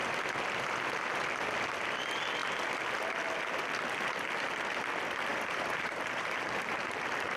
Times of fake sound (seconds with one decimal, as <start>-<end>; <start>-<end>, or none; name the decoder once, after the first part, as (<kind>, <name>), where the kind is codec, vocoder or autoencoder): 5.3-6.7 (vocoder, BigVGAN v2)